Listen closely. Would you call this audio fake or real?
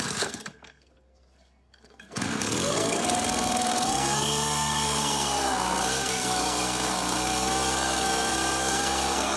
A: fake